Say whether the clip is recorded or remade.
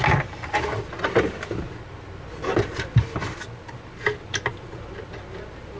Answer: recorded